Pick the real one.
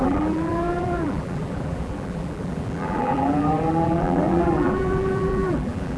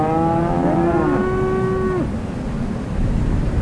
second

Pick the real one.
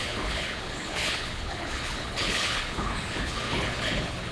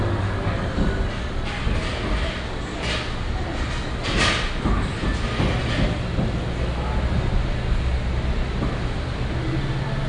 second